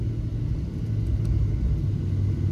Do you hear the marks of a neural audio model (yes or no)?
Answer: no